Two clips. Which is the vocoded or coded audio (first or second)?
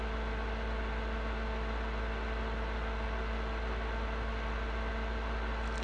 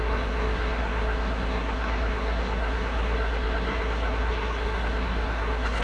second